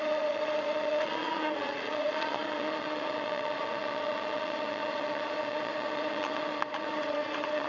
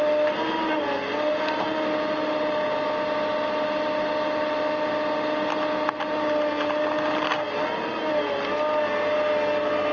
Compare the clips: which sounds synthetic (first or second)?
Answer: first